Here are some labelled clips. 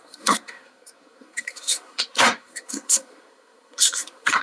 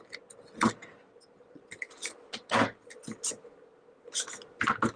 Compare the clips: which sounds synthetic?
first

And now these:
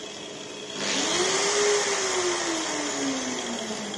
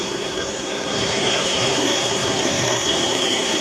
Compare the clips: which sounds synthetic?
second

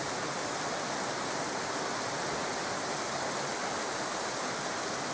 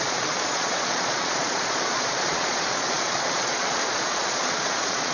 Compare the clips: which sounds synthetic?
second